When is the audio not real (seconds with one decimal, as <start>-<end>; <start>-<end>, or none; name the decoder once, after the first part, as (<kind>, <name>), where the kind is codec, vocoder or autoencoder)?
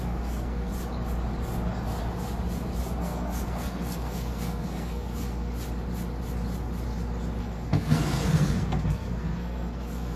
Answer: 0.0-0.7 (codec, SNAC); 3.0-5.5; 7.4-10.2